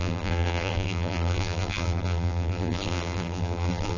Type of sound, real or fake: fake